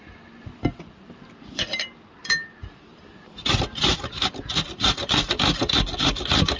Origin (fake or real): real